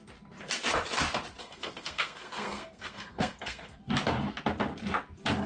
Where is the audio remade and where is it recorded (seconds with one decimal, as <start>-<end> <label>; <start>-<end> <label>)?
0.0-1.4 recorded; 1.4-3.8 remade; 3.8-5.5 recorded